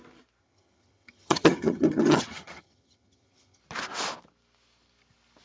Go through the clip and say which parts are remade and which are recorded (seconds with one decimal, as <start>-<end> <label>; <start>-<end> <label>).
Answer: 0.0-0.4 recorded; 0.4-3.6 remade; 3.6-5.4 recorded